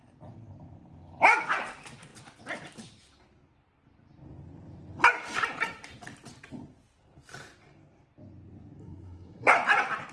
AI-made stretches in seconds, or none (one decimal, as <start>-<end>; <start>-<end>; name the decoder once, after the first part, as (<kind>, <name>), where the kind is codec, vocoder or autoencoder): 8.8-9.5 (codec, SNAC)